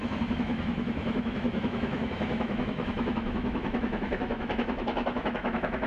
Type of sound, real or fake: fake